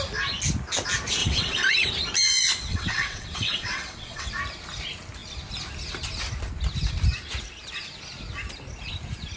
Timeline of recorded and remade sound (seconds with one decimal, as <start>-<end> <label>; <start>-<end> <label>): 0.0-1.2 recorded; 1.2-1.9 remade; 1.9-2.7 recorded; 2.7-4.3 remade; 4.3-9.4 recorded